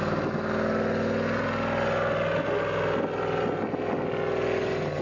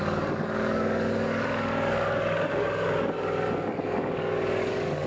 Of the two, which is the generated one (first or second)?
second